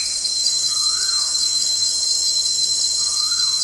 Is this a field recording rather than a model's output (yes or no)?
no